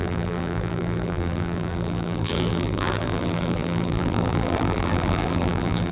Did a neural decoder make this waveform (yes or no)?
yes